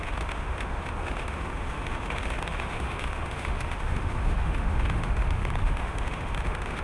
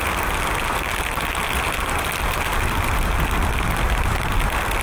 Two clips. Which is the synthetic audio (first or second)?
first